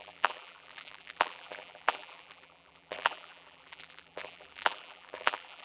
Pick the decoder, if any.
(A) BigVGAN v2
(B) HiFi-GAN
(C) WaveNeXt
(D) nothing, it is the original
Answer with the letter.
A